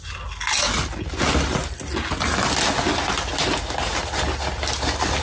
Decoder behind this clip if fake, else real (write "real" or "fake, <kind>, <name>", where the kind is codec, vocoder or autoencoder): real